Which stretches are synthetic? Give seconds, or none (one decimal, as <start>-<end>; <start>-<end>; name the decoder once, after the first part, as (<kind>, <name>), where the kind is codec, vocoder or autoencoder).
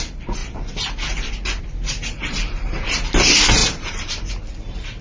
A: none